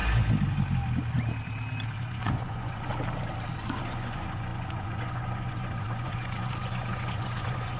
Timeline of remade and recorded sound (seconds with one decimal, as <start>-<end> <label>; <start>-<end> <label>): 0.0-2.0 recorded; 2.0-2.9 remade; 2.9-3.5 recorded; 3.5-7.8 remade